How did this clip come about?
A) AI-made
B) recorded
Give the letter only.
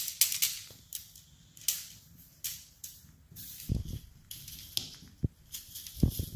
B